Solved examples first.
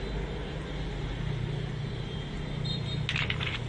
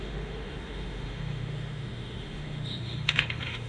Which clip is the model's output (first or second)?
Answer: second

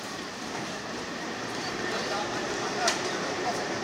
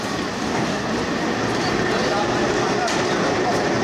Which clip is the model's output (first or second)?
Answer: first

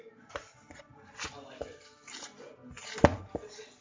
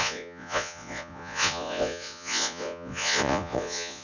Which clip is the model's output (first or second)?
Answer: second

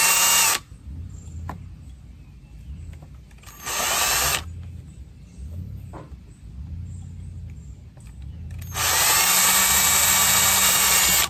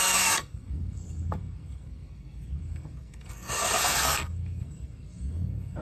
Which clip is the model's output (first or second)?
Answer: second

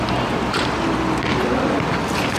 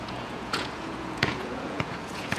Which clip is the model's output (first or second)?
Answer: second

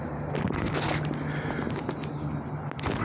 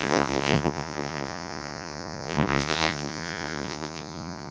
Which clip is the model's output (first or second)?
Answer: second